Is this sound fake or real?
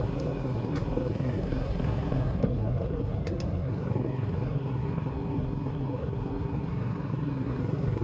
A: fake